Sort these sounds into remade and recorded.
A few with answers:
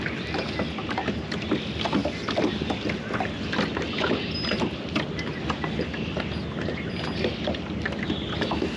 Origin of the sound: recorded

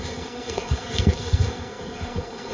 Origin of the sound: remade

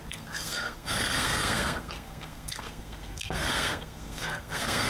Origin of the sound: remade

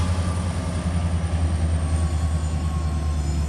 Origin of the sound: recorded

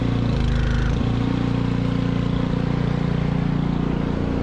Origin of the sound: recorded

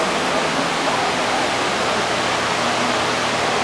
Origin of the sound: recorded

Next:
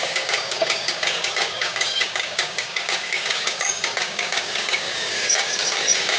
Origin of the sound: remade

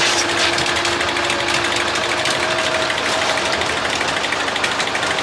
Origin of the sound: recorded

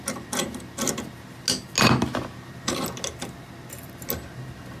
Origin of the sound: recorded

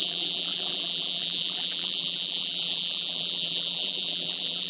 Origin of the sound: remade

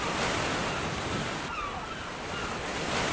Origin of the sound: recorded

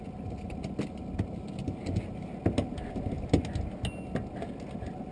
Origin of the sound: recorded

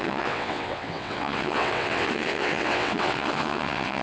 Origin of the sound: remade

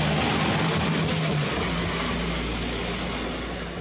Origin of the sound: recorded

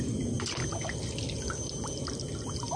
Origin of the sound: recorded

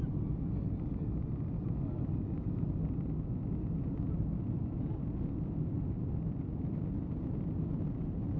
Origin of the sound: recorded